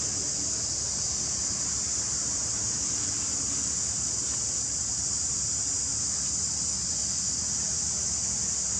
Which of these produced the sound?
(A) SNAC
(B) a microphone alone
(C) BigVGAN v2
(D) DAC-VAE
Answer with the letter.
B